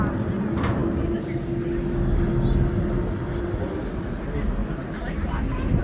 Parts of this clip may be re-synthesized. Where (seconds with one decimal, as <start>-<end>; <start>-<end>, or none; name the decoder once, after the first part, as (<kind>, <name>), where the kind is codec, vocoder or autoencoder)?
none